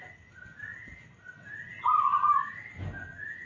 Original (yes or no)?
yes